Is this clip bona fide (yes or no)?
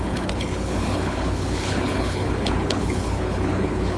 no